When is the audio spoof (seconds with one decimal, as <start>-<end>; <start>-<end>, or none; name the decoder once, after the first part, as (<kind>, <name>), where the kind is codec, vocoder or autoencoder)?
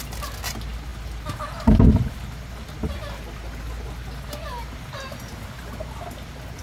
none